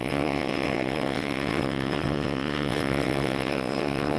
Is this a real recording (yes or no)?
no